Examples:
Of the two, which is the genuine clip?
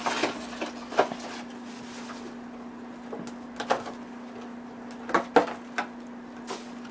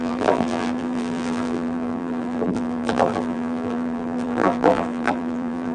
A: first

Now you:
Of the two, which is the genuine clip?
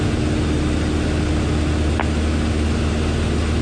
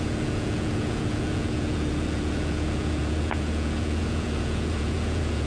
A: first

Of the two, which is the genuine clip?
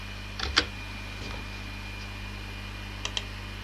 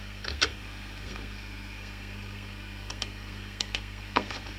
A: first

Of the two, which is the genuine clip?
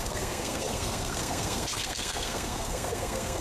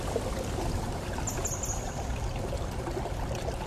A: second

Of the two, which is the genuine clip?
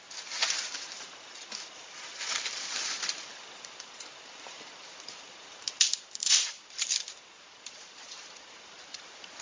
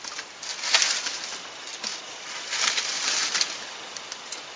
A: second